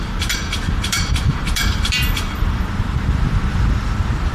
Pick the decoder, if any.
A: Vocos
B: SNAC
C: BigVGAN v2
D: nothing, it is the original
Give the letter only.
C